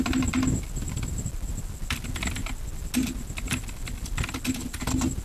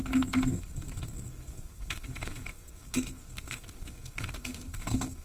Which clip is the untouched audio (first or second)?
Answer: first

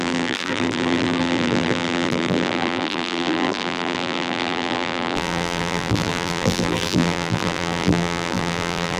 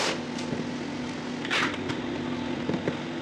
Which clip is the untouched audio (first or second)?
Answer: second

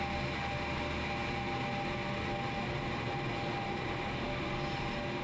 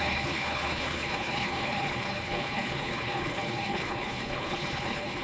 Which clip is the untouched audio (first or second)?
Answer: first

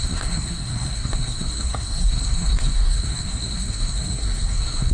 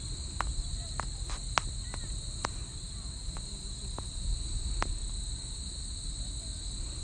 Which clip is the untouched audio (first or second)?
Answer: second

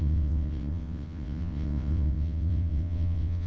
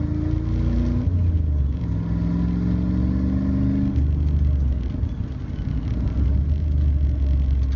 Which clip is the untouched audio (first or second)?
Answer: second